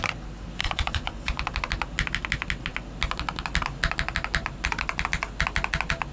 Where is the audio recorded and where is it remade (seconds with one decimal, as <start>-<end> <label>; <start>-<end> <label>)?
0.0-0.6 recorded; 0.6-1.4 remade; 1.4-6.1 recorded